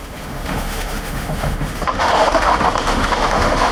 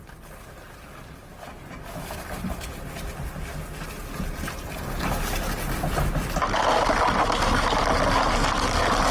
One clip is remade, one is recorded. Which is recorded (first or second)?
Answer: second